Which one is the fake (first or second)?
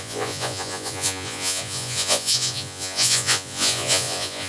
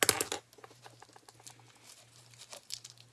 first